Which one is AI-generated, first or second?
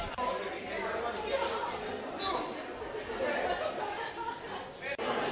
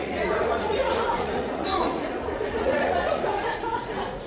second